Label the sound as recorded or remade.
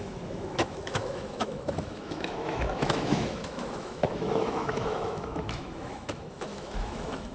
remade